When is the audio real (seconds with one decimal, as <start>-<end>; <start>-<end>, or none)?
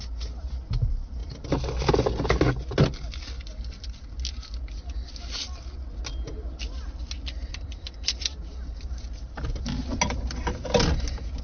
0.0-1.2; 1.9-7.5; 8.2-11.4